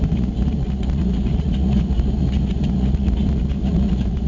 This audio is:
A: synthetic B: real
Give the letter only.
A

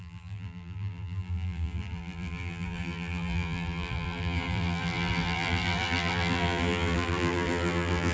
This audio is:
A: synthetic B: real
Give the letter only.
A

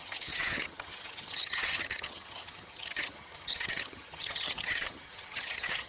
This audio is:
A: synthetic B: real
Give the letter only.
A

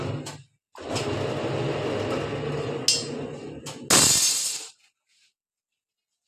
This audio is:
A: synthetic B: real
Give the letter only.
B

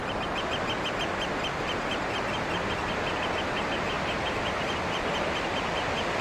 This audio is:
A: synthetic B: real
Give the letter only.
B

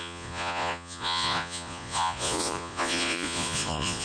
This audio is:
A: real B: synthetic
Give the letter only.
B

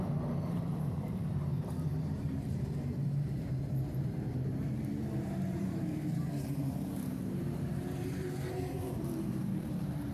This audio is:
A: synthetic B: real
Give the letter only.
A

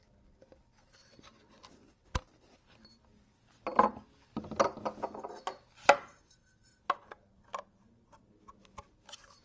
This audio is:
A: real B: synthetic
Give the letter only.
A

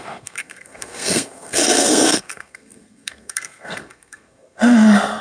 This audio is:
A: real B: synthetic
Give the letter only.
B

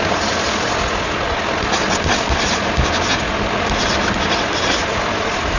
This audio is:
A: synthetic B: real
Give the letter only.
B